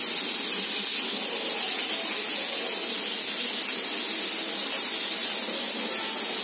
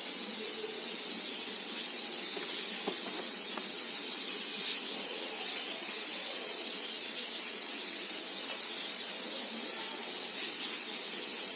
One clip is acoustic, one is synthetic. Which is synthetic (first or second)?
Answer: second